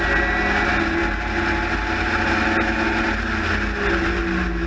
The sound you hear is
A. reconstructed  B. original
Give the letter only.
B